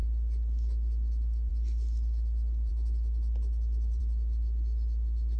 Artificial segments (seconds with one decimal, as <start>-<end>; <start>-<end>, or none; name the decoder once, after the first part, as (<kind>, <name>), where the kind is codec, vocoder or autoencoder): none

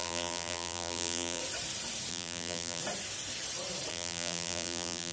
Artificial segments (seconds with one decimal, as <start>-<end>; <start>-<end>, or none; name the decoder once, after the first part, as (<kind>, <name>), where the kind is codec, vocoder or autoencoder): 0.0-1.4 (vocoder, BigVGAN v2); 2.1-2.8; 3.9-5.1

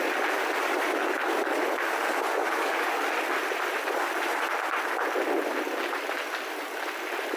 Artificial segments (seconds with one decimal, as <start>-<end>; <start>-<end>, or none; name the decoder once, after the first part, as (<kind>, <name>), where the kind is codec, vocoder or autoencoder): 2.4-3.0 (codec, DAC)

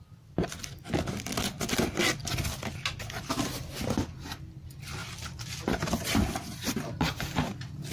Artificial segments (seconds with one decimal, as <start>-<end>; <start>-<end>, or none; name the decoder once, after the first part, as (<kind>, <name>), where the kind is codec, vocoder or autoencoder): none

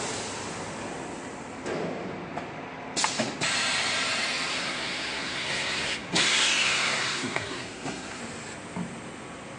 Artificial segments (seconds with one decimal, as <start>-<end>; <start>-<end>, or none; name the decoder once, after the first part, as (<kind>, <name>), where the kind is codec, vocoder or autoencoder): 4.5-8.2 (codec, SNAC)

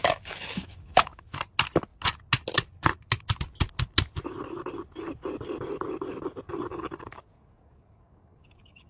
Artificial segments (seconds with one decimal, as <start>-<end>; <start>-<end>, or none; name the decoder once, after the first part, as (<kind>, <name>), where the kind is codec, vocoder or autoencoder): 0.0-1.4 (codec, DAC); 6.7-8.9

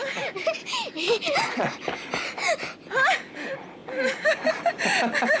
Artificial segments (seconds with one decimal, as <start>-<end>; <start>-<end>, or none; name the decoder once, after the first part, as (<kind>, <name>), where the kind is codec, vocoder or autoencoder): 0.8-1.6 (vocoder, BigVGAN v2)

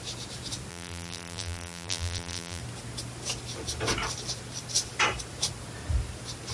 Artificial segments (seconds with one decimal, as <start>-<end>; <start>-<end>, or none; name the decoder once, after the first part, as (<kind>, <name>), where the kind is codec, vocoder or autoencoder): 0.7-2.6 (vocoder, BigVGAN v2)